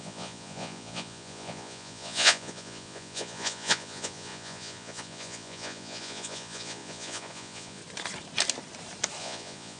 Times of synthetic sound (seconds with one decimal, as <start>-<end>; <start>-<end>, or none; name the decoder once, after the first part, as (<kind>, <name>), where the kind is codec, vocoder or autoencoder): 0.0-7.8 (vocoder, Vocos); 9.2-9.8